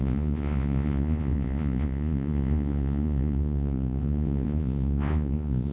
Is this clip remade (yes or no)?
yes